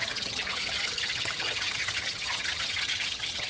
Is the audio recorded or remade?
remade